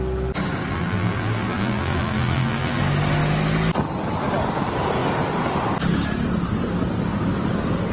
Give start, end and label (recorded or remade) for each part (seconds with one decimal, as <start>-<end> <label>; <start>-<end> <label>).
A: 0.0-0.7 recorded; 0.7-2.8 remade; 2.8-7.9 recorded